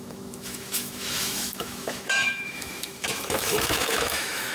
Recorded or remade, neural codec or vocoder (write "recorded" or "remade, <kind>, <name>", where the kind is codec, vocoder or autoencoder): remade, autoencoder, DAC-VAE